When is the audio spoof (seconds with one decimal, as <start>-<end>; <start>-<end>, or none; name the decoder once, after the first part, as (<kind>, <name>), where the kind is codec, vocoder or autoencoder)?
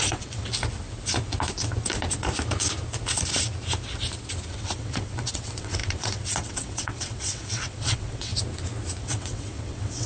0.0-0.5 (vocoder, WaveNeXt); 4.5-8.3; 9.0-10.1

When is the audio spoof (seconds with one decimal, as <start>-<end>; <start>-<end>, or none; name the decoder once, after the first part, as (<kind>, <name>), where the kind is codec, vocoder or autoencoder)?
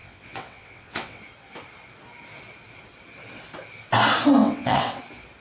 0.0-1.2 (vocoder, WaveNeXt); 4.4-5.0